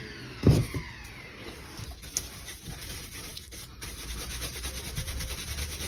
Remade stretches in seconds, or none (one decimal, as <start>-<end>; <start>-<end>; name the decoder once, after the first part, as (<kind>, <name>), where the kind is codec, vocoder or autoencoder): none